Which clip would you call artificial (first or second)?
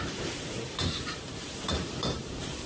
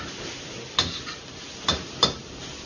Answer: first